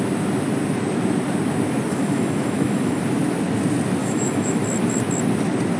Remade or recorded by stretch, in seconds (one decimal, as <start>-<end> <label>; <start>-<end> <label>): 0.0-1.9 recorded; 1.9-3.0 remade; 3.0-4.0 recorded; 4.0-4.6 remade; 4.6-5.8 recorded